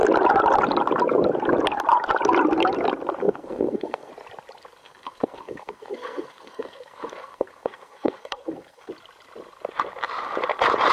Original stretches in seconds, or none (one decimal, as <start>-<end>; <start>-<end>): 0.0-3.2; 4.1-4.8; 8.9-10.9